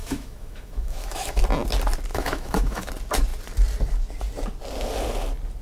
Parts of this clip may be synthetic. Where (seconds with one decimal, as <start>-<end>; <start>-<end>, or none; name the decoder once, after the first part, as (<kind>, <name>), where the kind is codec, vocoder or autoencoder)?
0.0-1.4 (autoencoder, DAC-VAE); 2.1-2.9